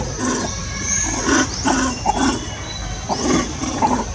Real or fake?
real